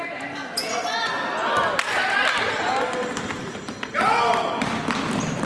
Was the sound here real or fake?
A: real